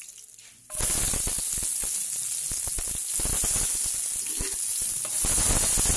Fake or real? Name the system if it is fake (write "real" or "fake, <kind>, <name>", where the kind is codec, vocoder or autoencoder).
real